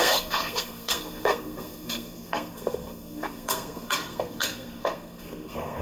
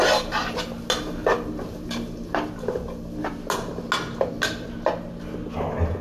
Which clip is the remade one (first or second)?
first